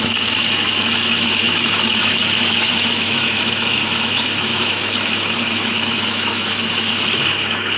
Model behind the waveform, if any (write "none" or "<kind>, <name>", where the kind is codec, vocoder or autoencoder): autoencoder, DAC-VAE